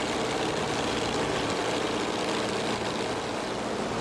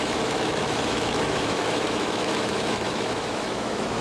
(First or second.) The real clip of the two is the first